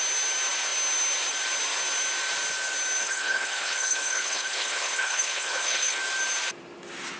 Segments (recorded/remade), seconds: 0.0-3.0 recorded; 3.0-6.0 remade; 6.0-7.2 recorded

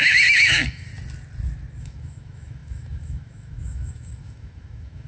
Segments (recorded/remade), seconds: 0.0-0.9 remade; 0.9-1.8 recorded; 1.8-5.1 remade

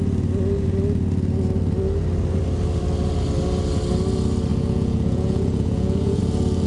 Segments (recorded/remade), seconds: 0.0-4.5 recorded; 4.5-6.2 remade; 6.2-6.7 recorded

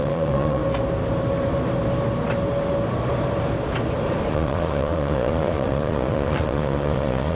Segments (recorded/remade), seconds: 0.0-0.6 remade; 0.6-4.3 recorded; 4.3-7.3 remade